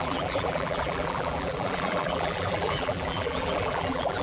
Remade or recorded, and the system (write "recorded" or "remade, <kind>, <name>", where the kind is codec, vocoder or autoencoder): remade, vocoder, BigVGAN v2